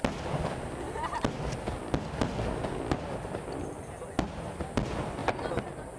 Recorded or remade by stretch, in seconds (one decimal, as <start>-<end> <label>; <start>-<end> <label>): 0.0-6.0 recorded